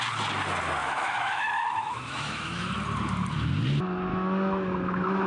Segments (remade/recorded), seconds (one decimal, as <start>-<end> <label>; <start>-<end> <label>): 0.0-0.8 recorded; 0.8-2.7 remade; 2.7-4.1 recorded; 4.1-5.3 remade